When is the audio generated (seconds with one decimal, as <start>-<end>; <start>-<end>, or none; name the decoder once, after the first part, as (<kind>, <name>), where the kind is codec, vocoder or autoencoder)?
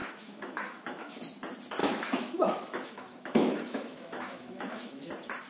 0.0-1.2 (autoencoder, DAC-VAE); 1.8-5.1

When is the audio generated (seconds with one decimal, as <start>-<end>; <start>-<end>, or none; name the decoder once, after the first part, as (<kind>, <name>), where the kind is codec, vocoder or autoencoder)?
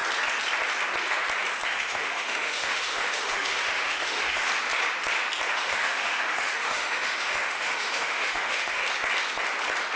1.7-4.5 (autoencoder, DAC-VAE); 5.5-8.8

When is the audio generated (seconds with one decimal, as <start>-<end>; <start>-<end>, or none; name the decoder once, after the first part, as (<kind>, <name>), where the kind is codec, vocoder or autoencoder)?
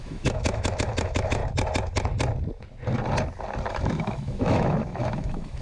0.0-1.4 (autoencoder, DAC-VAE); 3.7-5.6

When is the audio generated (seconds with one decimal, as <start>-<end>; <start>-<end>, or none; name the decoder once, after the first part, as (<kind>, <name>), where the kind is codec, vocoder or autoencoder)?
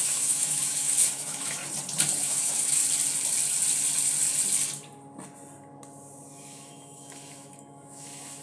0.0-1.6 (autoencoder, DAC-VAE); 2.2-2.8; 6.3-8.4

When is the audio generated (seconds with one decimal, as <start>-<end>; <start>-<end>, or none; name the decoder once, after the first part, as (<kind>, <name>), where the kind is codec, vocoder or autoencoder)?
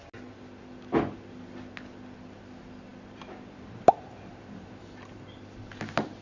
none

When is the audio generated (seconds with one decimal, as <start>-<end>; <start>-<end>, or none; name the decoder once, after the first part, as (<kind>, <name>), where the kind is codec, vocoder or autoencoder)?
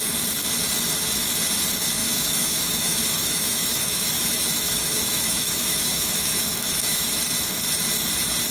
2.0-7.1 (autoencoder, DAC-VAE)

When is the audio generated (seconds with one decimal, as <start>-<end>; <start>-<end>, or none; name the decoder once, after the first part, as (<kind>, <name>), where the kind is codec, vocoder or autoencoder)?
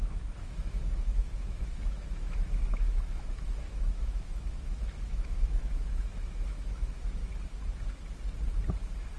0.0-7.2 (autoencoder, DAC-VAE)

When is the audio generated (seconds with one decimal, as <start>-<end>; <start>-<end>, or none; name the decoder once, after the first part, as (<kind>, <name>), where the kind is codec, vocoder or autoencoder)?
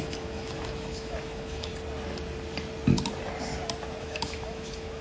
0.0-1.7 (autoencoder, DAC-VAE); 4.0-5.0